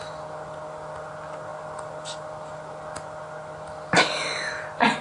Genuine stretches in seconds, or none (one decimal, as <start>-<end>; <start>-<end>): 0.0-5.0